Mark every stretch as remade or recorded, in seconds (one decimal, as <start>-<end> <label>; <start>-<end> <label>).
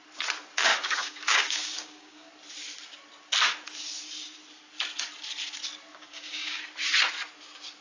0.0-0.7 recorded; 0.7-2.3 remade; 2.3-5.9 recorded; 5.9-6.6 remade; 6.6-7.8 recorded